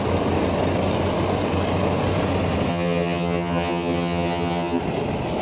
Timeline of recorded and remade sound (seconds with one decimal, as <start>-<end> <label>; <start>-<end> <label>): 0.0-2.7 recorded; 2.7-4.8 remade; 4.8-5.4 recorded

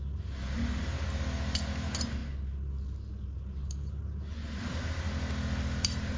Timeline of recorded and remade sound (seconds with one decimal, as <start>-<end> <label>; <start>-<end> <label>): 0.0-6.2 recorded

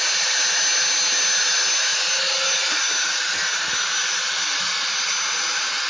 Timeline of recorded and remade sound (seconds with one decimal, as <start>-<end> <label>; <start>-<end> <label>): 0.0-5.9 recorded

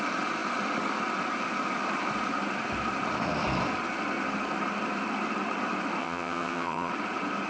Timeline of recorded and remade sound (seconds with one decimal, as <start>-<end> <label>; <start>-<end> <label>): 0.0-6.0 recorded; 6.0-6.9 remade; 6.9-7.5 recorded

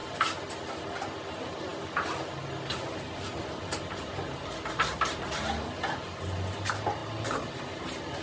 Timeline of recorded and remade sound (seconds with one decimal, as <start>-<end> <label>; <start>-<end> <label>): 0.0-8.2 recorded

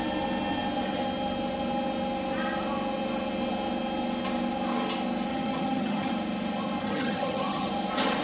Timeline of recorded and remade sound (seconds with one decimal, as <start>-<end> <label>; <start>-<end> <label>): 0.0-5.3 recorded; 5.3-6.1 remade; 6.1-6.8 recorded; 6.8-7.7 remade; 7.7-8.2 recorded

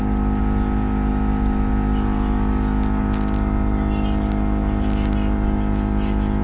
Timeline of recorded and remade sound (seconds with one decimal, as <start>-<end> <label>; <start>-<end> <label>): 0.0-6.4 recorded